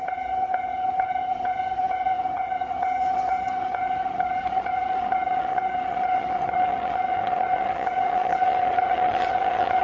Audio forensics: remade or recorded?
remade